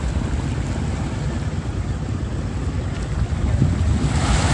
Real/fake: real